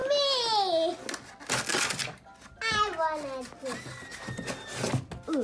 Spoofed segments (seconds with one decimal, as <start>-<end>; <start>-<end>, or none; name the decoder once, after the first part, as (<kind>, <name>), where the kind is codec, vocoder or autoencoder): none

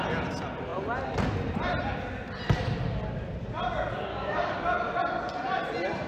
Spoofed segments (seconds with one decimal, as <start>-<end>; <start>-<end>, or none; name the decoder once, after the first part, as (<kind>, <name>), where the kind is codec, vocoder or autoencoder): 4.1-5.0 (codec, DAC)